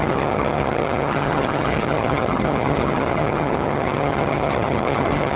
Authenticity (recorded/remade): remade